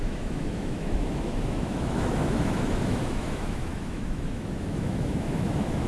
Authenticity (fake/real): fake